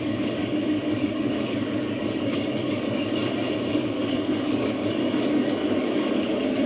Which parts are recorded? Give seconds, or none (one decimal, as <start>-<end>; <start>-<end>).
3.2-3.7